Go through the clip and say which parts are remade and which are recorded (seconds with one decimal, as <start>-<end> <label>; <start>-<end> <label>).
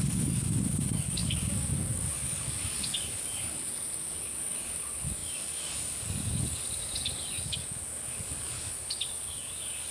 0.0-9.9 remade